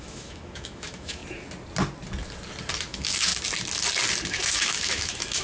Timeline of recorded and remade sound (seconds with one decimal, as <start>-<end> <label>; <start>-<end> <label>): 0.0-1.2 remade; 1.2-2.9 recorded; 2.9-3.3 remade; 3.3-4.3 recorded; 4.3-5.4 remade